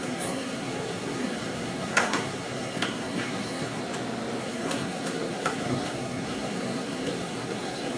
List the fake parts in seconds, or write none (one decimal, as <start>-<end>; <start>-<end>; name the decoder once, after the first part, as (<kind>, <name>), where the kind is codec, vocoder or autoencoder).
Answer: 0.0-3.8 (codec, SNAC); 4.4-8.0